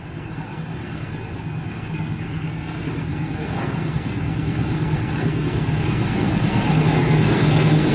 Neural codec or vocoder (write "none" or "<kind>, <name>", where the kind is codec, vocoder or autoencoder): codec, SNAC